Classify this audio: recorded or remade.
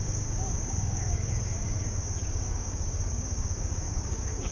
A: remade